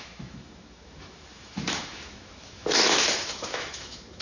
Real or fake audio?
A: fake